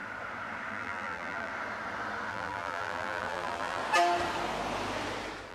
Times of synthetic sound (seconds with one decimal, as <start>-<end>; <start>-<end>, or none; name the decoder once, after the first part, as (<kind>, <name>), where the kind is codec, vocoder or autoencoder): 0.7-1.5 (vocoder, BigVGAN v2); 2.3-3.8